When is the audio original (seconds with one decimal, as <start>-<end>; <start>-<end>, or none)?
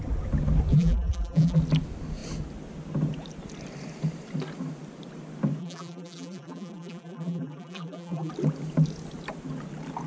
0.0-0.7; 1.6-5.6; 8.3-10.1